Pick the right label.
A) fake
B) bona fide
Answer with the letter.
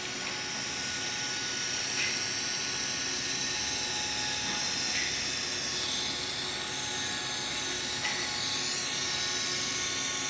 B